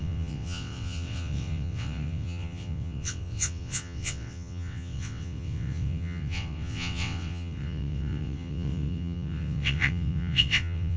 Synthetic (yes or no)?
yes